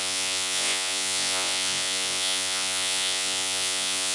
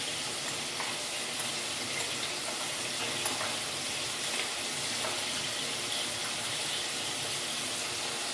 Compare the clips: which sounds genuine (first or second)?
second